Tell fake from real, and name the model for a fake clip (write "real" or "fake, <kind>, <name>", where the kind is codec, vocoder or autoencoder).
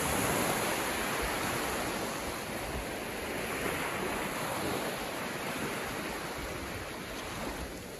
real